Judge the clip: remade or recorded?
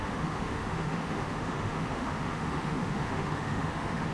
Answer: remade